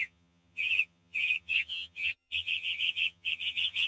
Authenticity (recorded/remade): remade